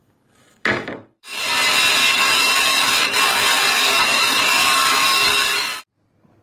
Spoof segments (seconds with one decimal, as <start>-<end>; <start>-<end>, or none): 0.0-1.4; 2.0-5.8